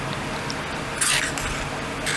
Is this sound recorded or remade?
recorded